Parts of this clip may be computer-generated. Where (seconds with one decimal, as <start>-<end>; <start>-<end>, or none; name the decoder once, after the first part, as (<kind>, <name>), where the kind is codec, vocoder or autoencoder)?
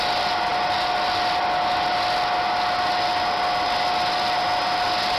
none